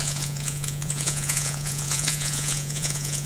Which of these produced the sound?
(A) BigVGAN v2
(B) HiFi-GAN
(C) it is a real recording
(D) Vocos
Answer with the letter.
D